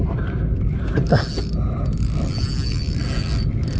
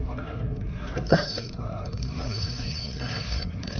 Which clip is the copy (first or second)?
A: second